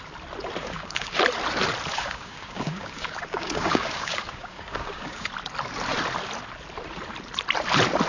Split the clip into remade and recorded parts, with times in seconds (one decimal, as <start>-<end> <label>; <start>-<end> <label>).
0.0-0.6 recorded; 0.6-1.2 remade; 1.2-1.9 recorded; 1.9-5.3 remade; 5.3-8.1 recorded